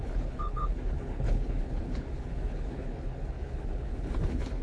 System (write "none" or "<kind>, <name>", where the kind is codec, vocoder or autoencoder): codec, HILCodec